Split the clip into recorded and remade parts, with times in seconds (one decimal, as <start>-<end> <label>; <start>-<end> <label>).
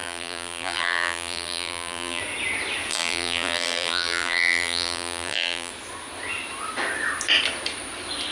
0.0-2.2 remade; 2.2-2.9 recorded; 2.9-5.7 remade; 5.7-8.3 recorded